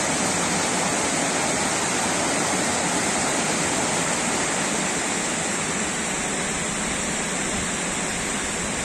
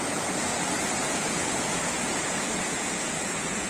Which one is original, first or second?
first